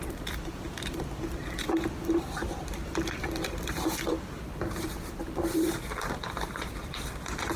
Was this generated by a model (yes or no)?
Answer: yes